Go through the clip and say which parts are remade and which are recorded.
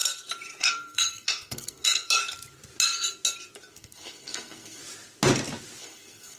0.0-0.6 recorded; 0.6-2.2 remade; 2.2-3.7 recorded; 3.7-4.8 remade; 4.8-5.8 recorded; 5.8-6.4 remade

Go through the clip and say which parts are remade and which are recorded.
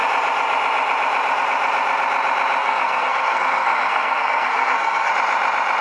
0.0-2.6 recorded; 2.6-5.1 remade; 5.1-5.8 recorded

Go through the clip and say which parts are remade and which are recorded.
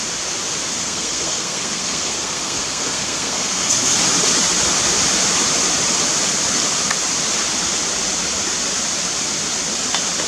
0.0-0.8 recorded; 0.8-4.0 remade; 4.0-10.3 recorded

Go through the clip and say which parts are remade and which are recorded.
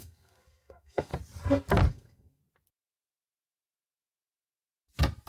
0.0-1.1 remade; 1.1-1.9 recorded; 1.9-2.4 remade; 2.4-5.3 recorded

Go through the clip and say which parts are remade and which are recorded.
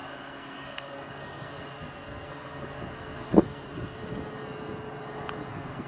0.0-4.0 remade; 4.0-5.5 recorded; 5.5-5.9 remade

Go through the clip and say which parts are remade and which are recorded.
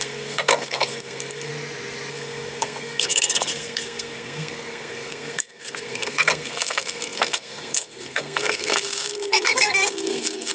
0.0-1.5 remade; 1.5-2.1 recorded; 2.1-10.5 remade